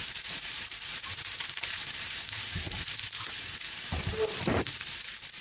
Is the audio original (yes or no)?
no